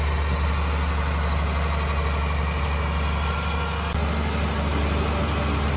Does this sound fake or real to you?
real